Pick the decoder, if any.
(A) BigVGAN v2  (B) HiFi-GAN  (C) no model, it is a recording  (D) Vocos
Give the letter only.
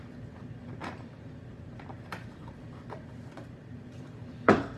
A